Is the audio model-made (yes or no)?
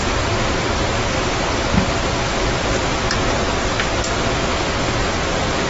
no